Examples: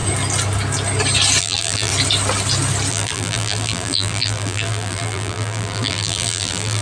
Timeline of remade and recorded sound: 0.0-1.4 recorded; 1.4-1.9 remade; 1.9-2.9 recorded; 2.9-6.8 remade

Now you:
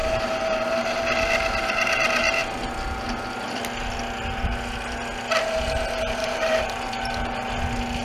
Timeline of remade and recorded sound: 0.0-1.0 remade; 1.0-6.2 recorded; 6.2-7.0 remade; 7.0-8.0 recorded